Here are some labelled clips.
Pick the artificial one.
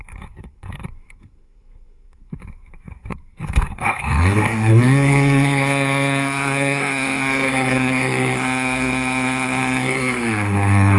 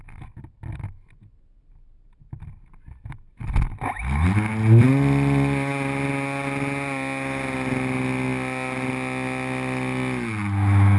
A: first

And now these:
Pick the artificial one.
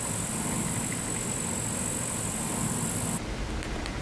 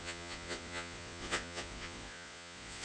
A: second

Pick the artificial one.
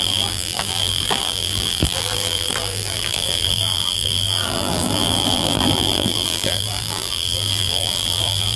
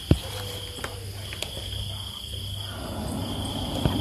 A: first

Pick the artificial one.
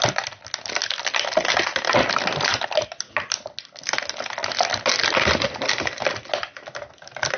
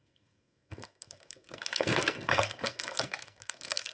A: second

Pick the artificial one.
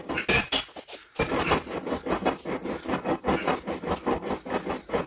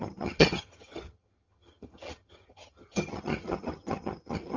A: second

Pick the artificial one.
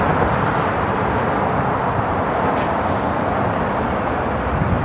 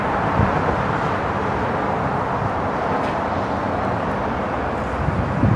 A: first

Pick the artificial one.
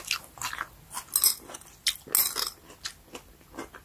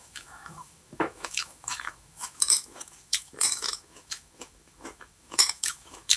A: second